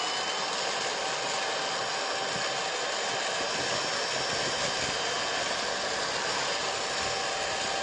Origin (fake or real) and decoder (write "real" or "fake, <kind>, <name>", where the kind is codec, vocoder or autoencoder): real